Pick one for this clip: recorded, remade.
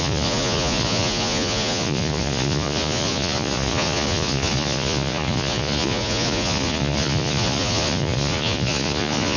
remade